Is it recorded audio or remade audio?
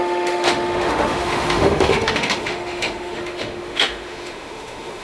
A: remade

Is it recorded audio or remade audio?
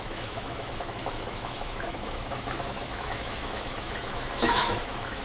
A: remade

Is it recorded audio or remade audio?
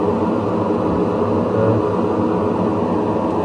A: recorded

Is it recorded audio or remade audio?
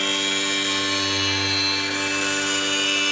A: recorded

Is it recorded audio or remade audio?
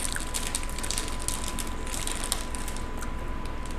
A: recorded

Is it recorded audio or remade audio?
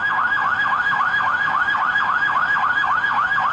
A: remade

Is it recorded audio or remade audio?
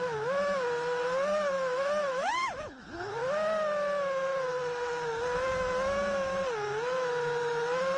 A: remade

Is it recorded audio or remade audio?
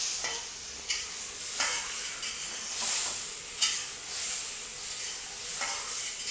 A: recorded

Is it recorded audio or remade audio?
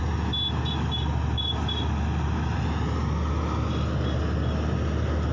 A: recorded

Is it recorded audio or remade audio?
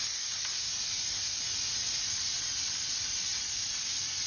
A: recorded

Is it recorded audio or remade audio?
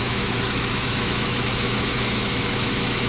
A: remade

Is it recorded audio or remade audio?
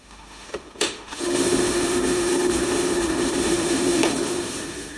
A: remade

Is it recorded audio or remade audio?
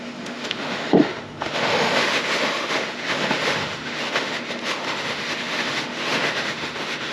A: remade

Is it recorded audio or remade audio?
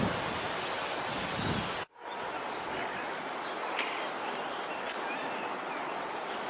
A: recorded